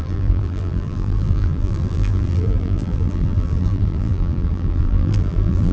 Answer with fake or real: fake